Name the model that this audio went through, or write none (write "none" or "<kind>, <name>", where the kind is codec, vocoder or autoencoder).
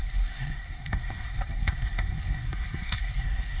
codec, SNAC